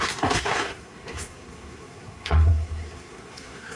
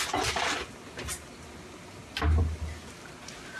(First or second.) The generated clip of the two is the first